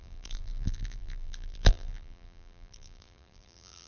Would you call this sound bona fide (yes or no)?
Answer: no